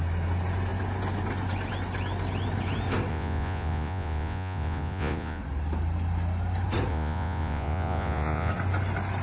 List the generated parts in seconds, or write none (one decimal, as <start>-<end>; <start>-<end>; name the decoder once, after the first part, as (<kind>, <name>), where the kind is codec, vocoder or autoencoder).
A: 3.1-5.4 (vocoder, Vocos); 6.9-8.5